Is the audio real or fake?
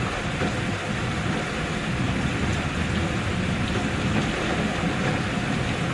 real